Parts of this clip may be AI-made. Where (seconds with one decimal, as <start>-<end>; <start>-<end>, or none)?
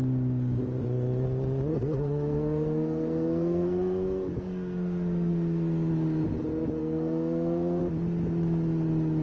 1.7-5.9; 6.8-7.8